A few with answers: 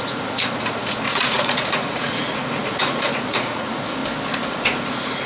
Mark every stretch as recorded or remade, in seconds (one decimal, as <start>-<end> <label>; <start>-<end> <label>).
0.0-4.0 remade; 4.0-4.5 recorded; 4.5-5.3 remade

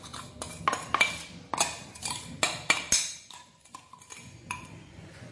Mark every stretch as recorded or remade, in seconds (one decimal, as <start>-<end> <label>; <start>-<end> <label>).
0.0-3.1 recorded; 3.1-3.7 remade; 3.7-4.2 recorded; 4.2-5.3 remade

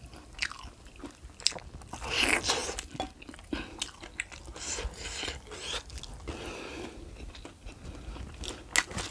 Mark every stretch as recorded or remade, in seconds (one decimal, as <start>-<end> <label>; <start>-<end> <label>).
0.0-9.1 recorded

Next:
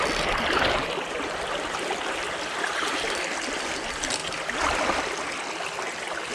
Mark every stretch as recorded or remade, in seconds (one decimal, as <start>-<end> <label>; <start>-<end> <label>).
0.0-6.3 recorded

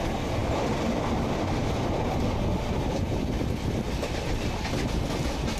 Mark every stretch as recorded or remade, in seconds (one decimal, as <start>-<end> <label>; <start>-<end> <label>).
0.0-5.6 recorded

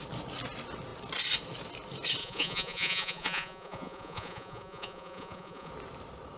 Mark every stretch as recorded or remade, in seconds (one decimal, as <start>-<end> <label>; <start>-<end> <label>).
0.0-2.2 recorded; 2.2-5.7 remade; 5.7-6.4 recorded